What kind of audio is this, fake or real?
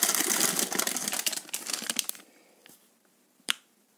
fake